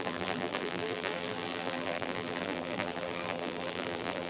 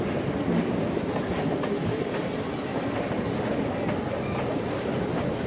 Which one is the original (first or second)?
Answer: second